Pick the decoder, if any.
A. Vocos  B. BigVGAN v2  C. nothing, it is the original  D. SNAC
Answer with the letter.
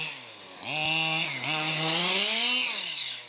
C